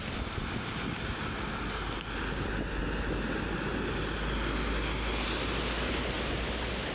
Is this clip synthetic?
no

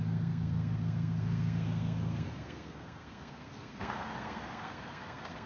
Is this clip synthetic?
yes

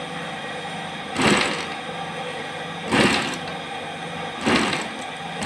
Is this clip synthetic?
no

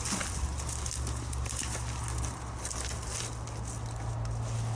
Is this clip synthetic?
no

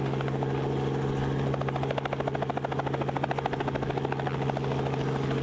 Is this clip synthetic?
no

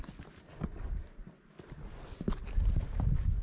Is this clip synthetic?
no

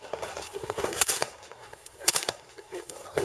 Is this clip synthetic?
yes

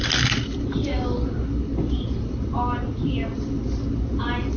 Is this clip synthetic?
no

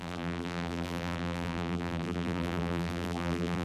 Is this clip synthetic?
yes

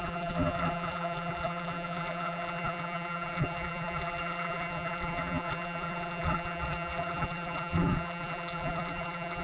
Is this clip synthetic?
yes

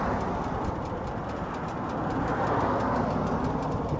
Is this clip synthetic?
no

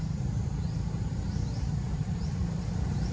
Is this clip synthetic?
yes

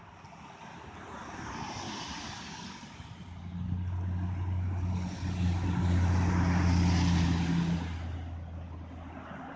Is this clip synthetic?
no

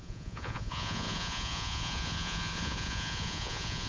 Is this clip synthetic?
yes